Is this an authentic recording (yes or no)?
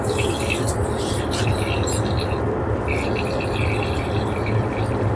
yes